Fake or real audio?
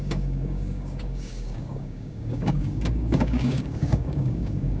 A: fake